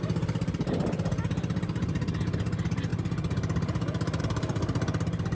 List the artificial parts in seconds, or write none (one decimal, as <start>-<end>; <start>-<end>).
none